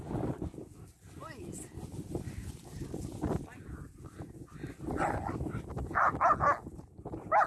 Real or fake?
real